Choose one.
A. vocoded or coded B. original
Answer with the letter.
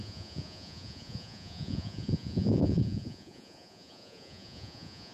A